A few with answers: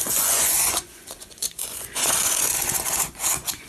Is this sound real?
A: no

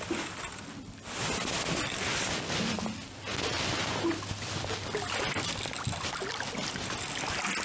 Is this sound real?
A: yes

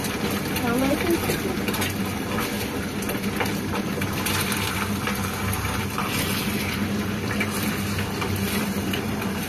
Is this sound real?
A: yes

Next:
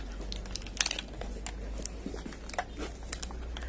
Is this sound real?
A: yes